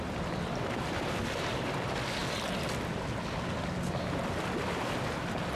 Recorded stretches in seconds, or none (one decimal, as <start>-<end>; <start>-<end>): 0.0-5.6